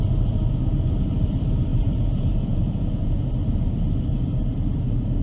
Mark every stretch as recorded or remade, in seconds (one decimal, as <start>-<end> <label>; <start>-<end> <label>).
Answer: 0.0-1.7 recorded; 1.7-3.3 remade; 3.3-5.2 recorded